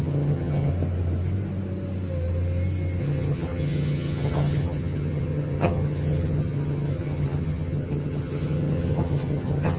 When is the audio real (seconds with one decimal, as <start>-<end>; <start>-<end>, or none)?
0.7-3.0

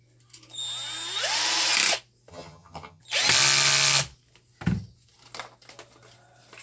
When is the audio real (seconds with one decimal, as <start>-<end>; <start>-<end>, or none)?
0.0-2.3; 3.0-6.6

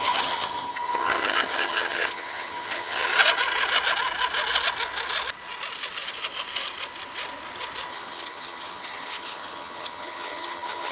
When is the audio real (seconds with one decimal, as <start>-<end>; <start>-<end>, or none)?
3.1-7.9

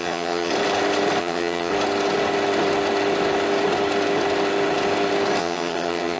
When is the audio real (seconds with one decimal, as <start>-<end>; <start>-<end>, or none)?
0.5-1.2; 1.7-5.4

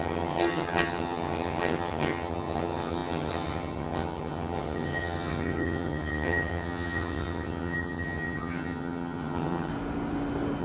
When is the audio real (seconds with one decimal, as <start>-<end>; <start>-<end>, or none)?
9.7-10.6